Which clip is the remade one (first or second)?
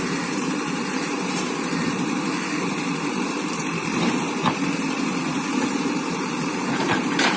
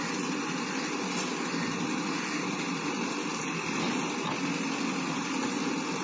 first